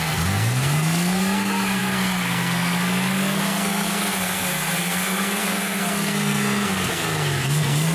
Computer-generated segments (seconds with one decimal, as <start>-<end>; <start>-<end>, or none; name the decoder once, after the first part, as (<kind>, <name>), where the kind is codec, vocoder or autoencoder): 0.0-7.9 (codec, SNAC)